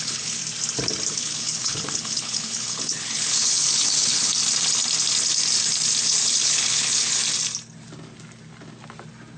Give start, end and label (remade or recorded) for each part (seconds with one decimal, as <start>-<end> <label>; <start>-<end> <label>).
0.0-0.4 remade; 0.4-1.1 recorded; 1.1-4.3 remade; 4.3-6.0 recorded; 6.0-7.2 remade; 7.2-9.4 recorded